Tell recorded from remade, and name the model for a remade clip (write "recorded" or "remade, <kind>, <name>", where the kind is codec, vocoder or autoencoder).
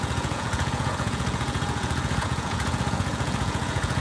remade, vocoder, Vocos